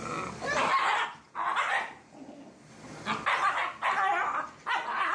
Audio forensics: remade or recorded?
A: recorded